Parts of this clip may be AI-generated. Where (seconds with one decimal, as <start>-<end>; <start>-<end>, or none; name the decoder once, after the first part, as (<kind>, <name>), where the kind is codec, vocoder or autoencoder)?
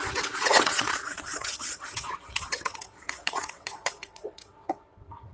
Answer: 0.0-5.3 (vocoder, WaveNeXt)